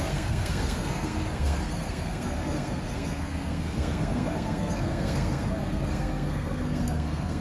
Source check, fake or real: fake